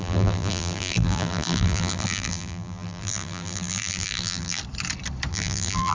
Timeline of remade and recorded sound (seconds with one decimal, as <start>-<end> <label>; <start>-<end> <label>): 0.0-4.6 remade; 4.6-5.3 recorded; 5.3-5.9 remade